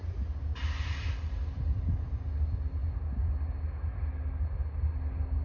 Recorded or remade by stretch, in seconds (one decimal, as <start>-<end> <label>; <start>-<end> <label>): 0.0-5.4 recorded